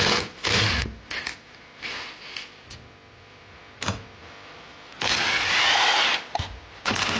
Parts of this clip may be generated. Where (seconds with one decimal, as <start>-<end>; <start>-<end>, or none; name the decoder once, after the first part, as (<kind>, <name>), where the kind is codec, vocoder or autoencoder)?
none